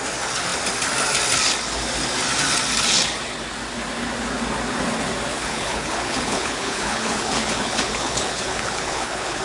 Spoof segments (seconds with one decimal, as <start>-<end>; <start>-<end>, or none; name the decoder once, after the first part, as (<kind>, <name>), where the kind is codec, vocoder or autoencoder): 5.3-9.4 (codec, HILCodec)